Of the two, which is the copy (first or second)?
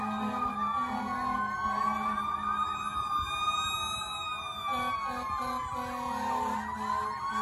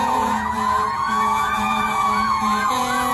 second